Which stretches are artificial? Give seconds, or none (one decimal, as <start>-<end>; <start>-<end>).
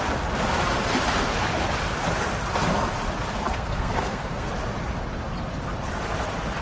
3.5-4.5